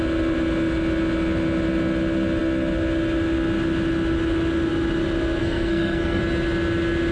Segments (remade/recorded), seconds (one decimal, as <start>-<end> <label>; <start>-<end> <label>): 0.0-5.4 recorded; 5.4-6.2 remade; 6.2-7.1 recorded